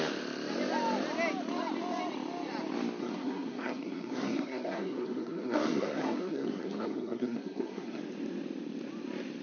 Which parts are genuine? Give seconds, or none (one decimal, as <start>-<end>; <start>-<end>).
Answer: 0.0-3.0; 8.0-9.4